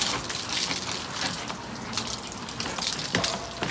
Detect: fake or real real